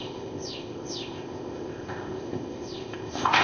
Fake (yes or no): yes